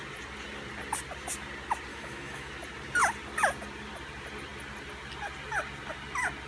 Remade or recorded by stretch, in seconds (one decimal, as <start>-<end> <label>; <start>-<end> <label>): 0.0-1.9 recorded; 1.9-2.5 remade; 2.5-6.5 recorded